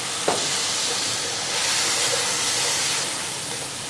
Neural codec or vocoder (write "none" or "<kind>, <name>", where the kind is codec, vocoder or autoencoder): none